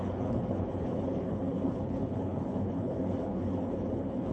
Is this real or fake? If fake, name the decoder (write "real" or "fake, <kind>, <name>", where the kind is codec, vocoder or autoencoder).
fake, codec, HILCodec